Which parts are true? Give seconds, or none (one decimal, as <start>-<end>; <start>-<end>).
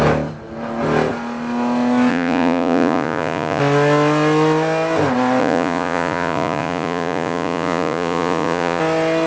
0.0-2.1; 3.6-5.4; 8.8-9.3